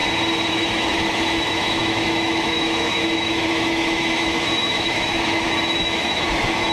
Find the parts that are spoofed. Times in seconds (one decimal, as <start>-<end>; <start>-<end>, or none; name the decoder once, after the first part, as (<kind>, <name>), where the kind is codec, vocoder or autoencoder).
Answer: 0.5-6.7 (autoencoder, DAC-VAE)